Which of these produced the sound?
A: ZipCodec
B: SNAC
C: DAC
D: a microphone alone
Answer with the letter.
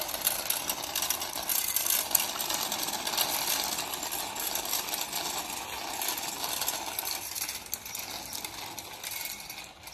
D